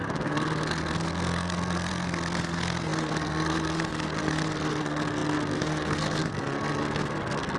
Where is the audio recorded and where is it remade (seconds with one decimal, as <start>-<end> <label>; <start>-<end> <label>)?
0.0-7.6 remade